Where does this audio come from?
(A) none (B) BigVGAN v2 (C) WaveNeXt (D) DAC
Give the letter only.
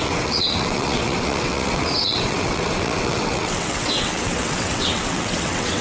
C